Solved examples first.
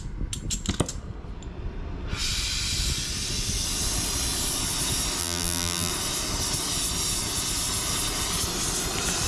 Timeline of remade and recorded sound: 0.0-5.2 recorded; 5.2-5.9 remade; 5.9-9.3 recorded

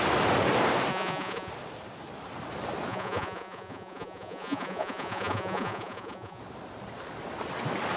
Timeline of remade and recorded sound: 0.0-0.9 recorded; 0.9-1.5 remade; 1.5-2.9 recorded; 2.9-6.4 remade; 6.4-8.0 recorded

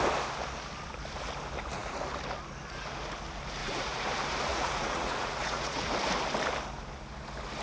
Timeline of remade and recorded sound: 0.0-3.6 recorded; 3.6-4.1 remade; 4.1-4.5 recorded; 4.5-5.9 remade; 5.9-7.6 recorded

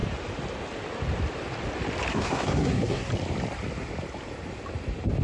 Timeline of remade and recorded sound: 0.0-2.1 recorded; 2.1-3.1 remade; 3.1-5.2 recorded

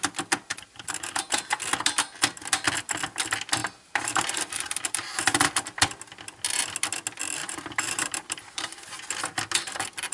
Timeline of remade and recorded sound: 0.0-0.5 recorded; 0.5-1.6 remade; 1.6-3.6 recorded; 3.6-5.4 remade; 5.4-7.4 recorded; 7.4-9.0 remade; 9.0-10.1 recorded

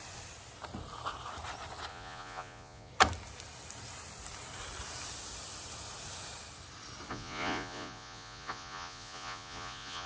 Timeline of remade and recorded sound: 0.0-1.9 recorded; 1.9-2.9 remade; 2.9-7.1 recorded; 7.1-10.1 remade

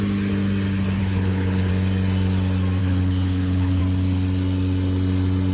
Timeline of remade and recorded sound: 0.0-1.0 recorded; 1.0-1.7 remade; 1.7-2.8 recorded; 2.8-3.8 remade; 3.8-5.5 recorded